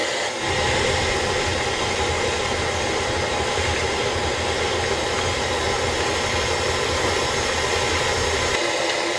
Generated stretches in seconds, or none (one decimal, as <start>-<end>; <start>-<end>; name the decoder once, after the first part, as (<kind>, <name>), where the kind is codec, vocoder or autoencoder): 0.0-1.5 (vocoder, BigVGAN v2); 3.2-4.3; 6.7-9.2

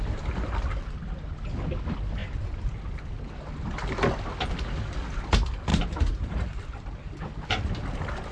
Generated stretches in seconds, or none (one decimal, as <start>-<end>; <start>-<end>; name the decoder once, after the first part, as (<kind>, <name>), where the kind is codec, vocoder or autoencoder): 5.7-7.2 (vocoder, BigVGAN v2)

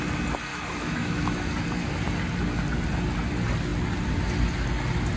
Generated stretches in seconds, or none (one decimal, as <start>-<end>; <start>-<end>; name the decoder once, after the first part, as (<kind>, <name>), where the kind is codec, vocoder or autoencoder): 0.5-1.5 (autoencoder, DAC-VAE)

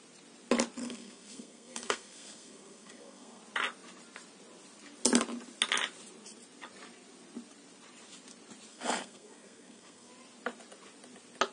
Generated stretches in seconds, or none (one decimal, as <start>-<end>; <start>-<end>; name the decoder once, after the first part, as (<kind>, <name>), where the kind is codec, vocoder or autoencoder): 0.8-3.4 (codec, SNAC); 8.7-10.1

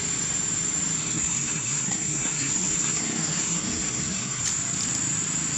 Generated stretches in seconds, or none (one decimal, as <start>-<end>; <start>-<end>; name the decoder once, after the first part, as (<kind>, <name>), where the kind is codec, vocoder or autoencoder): 1.0-4.4 (codec, SNAC)

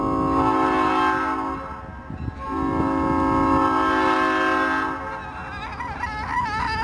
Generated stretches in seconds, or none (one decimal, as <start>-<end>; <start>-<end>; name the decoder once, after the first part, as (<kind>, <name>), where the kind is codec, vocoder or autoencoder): none